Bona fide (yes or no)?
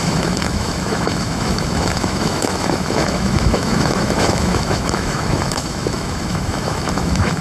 no